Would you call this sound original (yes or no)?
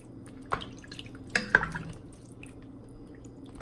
yes